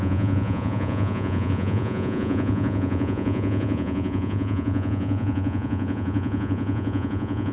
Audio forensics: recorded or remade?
remade